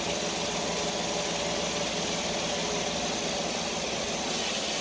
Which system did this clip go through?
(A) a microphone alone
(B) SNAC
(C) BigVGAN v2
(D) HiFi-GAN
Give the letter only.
A